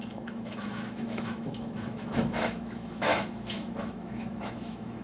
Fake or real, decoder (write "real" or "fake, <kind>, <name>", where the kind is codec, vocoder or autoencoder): fake, autoencoder, DAC-VAE